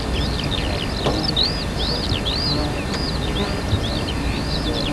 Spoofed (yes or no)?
no